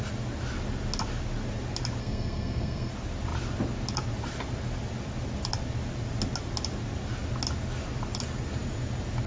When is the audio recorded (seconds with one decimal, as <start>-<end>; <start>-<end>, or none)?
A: 0.0-2.0; 2.9-9.3